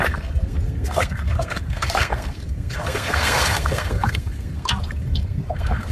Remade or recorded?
remade